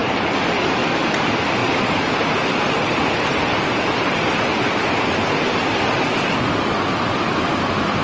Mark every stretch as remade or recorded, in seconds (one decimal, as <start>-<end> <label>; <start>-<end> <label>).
0.0-0.6 remade; 0.6-1.6 recorded; 1.6-4.4 remade; 4.4-8.0 recorded